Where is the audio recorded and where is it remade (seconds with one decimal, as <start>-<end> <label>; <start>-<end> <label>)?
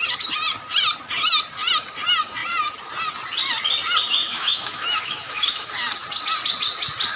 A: 0.0-4.2 recorded; 4.2-5.7 remade; 5.7-7.2 recorded